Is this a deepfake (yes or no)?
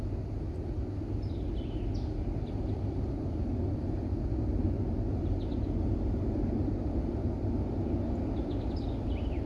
no